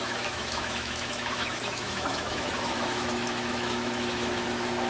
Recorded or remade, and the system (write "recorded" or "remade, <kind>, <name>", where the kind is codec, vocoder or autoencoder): remade, autoencoder, DAC-VAE